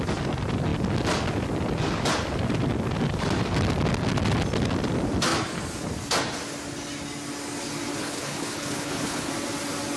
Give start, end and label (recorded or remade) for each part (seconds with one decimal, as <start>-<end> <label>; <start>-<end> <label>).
0.0-8.0 recorded; 8.0-9.3 remade; 9.3-10.0 recorded